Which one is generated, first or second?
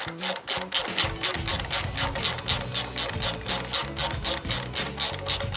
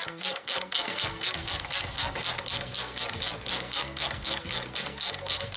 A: second